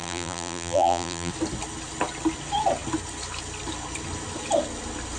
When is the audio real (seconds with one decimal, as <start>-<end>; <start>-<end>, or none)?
1.3-5.2